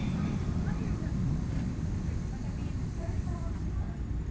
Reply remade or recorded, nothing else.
remade